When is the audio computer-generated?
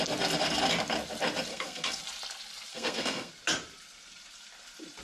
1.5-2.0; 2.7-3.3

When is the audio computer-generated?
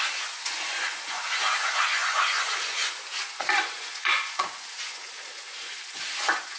0.0-6.6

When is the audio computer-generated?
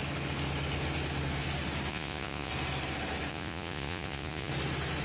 1.9-2.5; 3.3-4.5